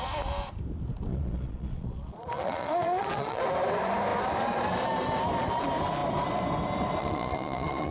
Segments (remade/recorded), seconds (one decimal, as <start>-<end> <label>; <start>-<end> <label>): 0.0-1.1 recorded; 1.1-3.4 remade; 3.4-7.0 recorded; 7.0-7.9 remade